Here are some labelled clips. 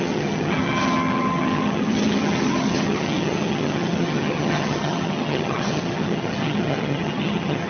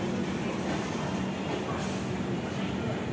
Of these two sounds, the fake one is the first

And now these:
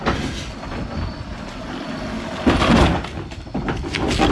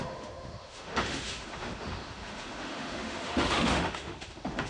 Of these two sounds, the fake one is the second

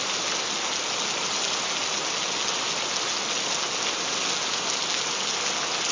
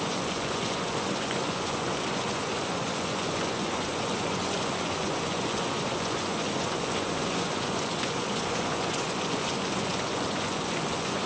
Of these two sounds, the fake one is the second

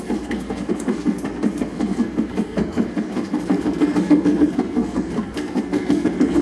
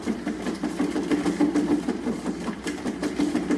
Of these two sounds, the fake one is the first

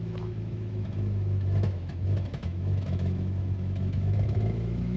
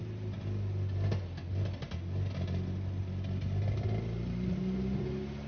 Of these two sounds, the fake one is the first